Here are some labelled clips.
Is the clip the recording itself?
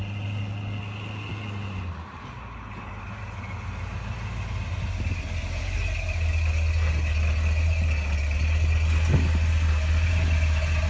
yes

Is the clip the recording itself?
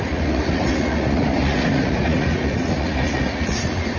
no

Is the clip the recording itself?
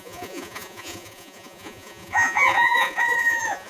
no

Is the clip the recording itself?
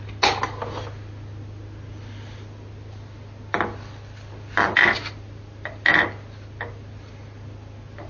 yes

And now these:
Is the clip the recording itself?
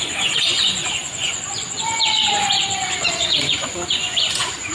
no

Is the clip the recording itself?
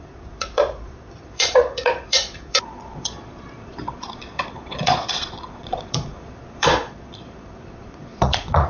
no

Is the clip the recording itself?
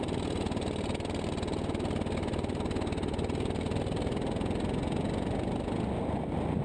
yes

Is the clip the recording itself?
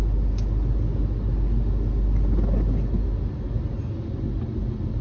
yes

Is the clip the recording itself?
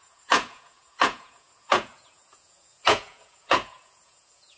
no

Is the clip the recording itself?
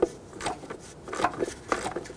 yes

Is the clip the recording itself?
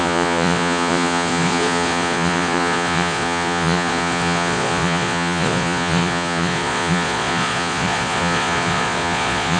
no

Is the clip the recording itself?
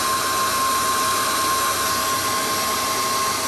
yes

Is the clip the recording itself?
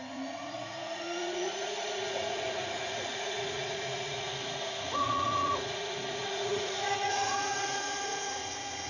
no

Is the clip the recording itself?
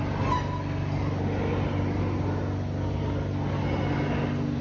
yes